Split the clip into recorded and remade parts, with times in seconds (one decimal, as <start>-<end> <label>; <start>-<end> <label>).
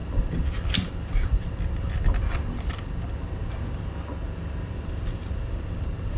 0.0-6.2 recorded